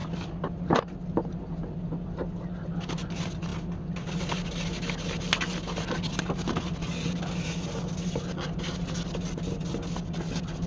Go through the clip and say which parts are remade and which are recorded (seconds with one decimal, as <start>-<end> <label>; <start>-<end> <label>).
0.0-10.7 recorded